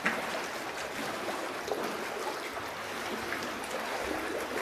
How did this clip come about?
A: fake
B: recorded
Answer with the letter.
B